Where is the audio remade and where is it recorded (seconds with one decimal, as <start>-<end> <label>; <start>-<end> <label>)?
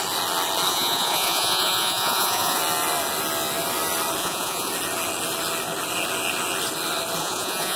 0.0-0.7 recorded; 0.7-2.6 remade; 2.6-4.2 recorded; 4.2-4.7 remade; 4.7-7.2 recorded; 7.2-7.8 remade